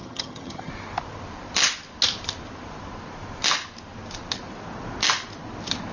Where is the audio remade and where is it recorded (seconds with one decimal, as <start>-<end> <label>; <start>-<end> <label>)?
0.0-0.7 remade; 0.7-5.9 recorded